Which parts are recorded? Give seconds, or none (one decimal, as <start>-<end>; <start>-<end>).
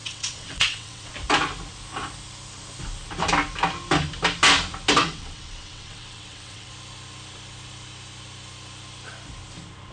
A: 1.1-5.0; 6.7-9.9